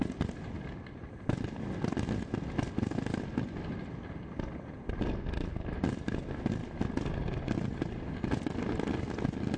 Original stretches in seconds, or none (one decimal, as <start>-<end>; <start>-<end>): 0.0-9.6